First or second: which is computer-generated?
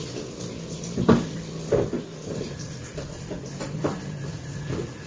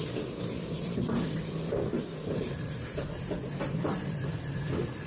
second